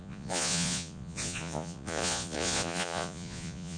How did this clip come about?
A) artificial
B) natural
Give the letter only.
A